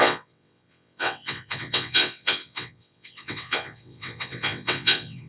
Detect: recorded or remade remade